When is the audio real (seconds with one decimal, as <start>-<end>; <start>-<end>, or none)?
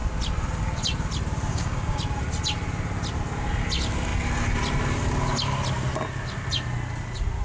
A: 0.0-1.5; 2.0-7.4